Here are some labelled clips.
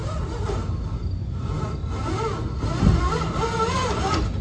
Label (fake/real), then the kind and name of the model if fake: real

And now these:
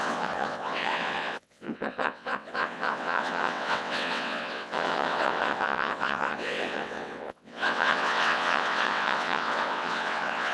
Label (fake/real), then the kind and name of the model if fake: fake, vocoder, WaveNeXt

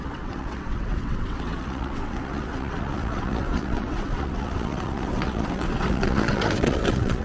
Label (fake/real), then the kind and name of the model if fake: fake, vocoder, WaveNeXt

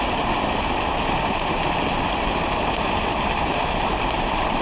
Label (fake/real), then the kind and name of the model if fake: real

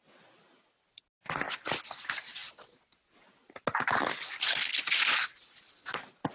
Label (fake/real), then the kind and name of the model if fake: real